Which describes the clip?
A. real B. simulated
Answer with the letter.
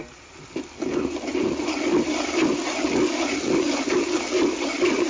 A